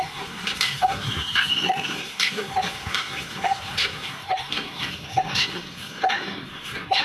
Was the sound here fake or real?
fake